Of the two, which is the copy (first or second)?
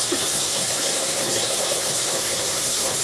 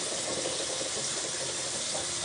first